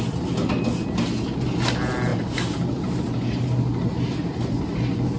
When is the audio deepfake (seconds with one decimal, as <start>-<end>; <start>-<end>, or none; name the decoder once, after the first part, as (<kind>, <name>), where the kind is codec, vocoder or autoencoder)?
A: none